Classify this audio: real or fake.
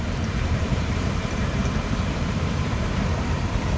fake